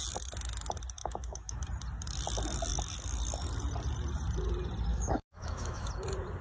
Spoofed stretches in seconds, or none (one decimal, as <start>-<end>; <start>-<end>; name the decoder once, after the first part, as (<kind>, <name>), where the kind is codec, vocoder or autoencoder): 1.0-1.6 (autoencoder, DAC-VAE); 4.9-5.9

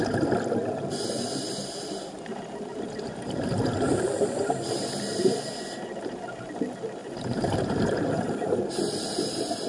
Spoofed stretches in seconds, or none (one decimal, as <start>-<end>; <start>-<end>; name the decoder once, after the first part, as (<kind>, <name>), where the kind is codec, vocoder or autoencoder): 7.0-8.6 (vocoder, BigVGAN v2)

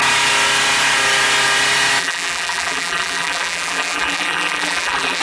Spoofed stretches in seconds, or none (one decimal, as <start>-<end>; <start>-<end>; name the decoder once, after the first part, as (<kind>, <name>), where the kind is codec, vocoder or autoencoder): 2.0-5.2 (vocoder, BigVGAN v2)

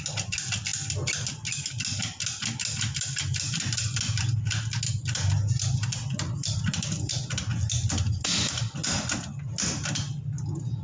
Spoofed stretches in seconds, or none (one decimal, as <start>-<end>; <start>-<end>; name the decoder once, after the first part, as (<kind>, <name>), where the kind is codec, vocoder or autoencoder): none

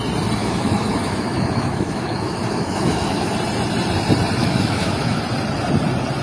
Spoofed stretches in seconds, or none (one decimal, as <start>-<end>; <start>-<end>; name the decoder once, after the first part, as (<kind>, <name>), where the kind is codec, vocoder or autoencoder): 0.4-3.3 (autoencoder, DAC-VAE); 4.4-5.2

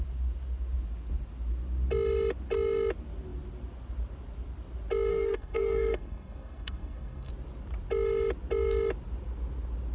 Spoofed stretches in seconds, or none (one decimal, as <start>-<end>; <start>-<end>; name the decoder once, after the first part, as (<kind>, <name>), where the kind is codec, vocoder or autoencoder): 5.1-7.3 (codec, SNAC)